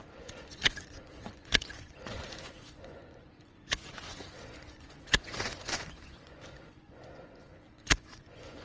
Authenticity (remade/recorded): remade